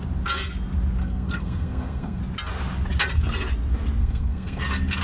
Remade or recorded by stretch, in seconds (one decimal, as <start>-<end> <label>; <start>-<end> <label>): 0.0-1.0 recorded; 1.0-2.2 remade; 2.2-4.0 recorded; 4.0-4.6 remade; 4.6-5.0 recorded